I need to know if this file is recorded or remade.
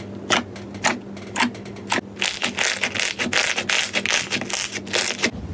recorded